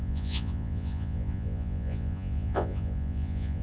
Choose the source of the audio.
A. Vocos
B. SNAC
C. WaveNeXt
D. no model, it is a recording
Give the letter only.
A